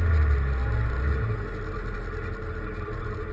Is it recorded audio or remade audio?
recorded